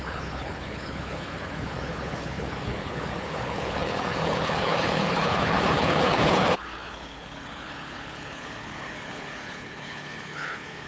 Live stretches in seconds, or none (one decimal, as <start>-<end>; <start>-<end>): none